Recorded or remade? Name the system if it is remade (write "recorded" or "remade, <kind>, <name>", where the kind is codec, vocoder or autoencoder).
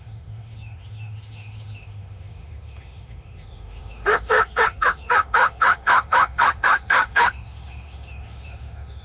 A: remade, autoencoder, DAC-VAE